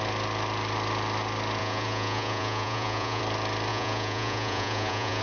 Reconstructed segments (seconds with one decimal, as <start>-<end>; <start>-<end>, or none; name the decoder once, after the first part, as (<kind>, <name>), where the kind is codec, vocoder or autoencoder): 1.6-3.2 (vocoder, Vocos); 3.7-5.2